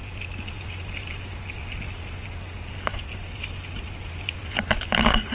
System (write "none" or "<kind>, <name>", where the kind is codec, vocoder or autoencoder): none